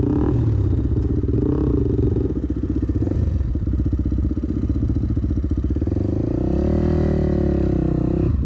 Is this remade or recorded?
recorded